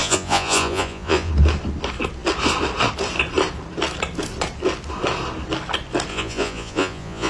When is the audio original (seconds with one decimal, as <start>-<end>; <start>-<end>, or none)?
1.3-6.1